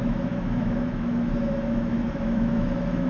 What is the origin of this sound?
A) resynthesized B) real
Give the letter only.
A